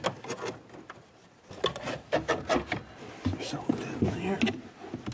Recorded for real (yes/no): yes